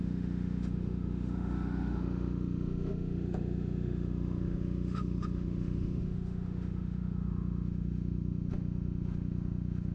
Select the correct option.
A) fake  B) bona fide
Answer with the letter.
A